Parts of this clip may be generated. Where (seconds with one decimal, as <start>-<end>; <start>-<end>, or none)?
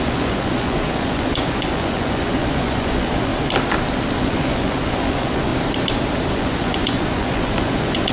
0.0-3.3; 4.2-5.5; 6.3-8.1